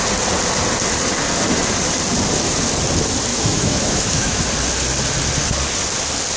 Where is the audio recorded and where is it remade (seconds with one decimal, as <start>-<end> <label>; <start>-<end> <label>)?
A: 0.0-3.3 recorded; 3.3-4.4 remade; 4.4-6.4 recorded